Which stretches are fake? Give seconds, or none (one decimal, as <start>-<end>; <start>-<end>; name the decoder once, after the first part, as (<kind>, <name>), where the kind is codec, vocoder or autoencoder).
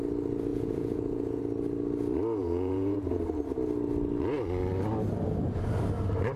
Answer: 0.5-1.4 (vocoder, Vocos); 2.4-3.2